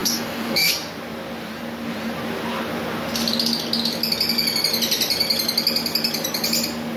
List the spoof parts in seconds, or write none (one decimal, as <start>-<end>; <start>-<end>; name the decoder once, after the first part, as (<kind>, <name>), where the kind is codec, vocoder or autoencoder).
0.0-0.7 (codec, DAC)